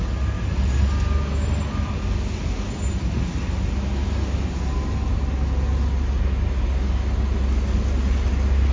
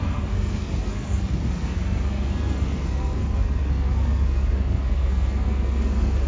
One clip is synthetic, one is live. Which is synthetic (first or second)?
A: second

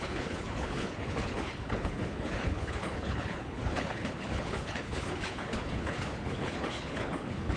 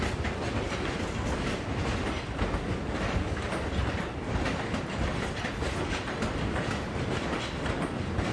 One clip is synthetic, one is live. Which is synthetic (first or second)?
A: first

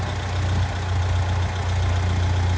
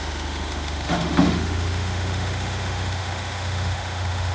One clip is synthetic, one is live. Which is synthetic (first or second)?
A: second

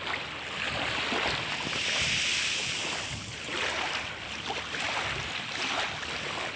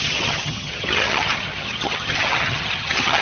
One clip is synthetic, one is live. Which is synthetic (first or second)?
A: second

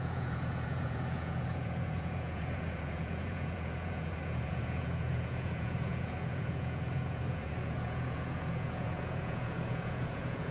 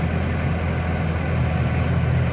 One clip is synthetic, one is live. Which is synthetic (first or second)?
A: first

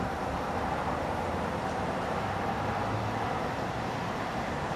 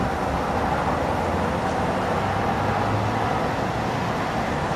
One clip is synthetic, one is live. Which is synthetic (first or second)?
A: first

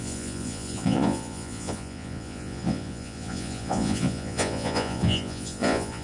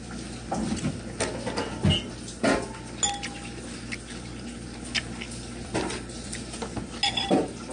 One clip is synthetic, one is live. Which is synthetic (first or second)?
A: first